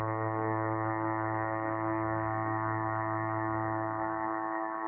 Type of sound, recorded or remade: remade